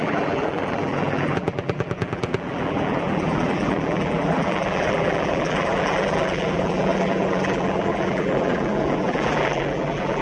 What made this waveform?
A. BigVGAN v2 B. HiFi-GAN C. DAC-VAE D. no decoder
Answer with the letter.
A